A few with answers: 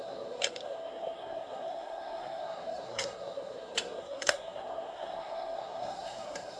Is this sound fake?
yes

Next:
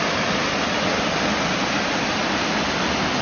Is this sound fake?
no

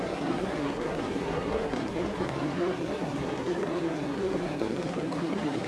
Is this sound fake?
yes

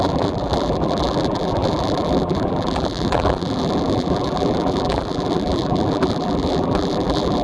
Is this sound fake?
yes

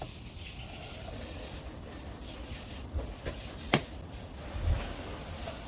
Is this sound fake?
no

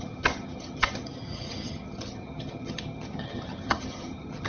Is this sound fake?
yes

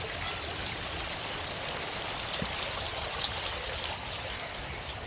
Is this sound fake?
no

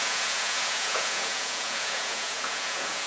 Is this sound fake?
yes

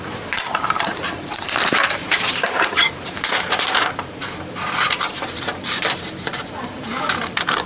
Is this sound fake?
yes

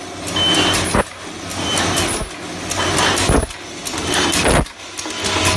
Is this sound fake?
no